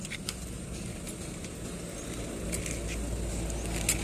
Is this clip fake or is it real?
real